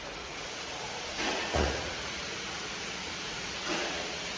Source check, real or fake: fake